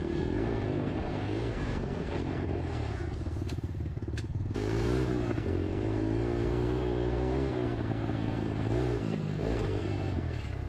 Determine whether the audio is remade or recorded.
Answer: remade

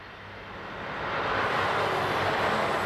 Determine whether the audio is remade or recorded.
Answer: recorded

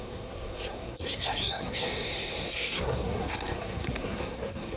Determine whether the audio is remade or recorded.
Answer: remade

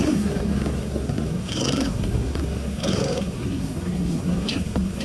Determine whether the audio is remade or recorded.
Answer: remade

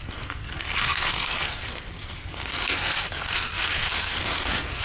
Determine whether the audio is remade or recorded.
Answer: remade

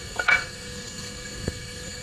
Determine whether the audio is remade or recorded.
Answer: remade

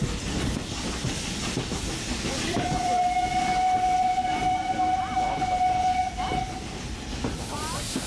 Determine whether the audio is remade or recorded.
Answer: recorded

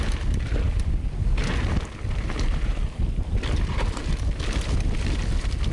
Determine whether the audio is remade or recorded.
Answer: recorded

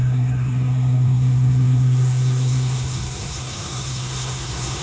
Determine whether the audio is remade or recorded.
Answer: remade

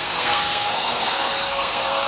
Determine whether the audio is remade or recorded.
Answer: remade